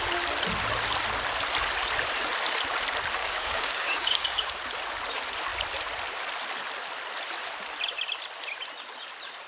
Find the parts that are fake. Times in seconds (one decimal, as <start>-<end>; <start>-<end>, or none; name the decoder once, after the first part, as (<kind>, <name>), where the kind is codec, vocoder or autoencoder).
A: 3.2-4.6 (codec, DAC)